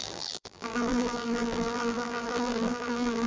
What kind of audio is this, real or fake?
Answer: fake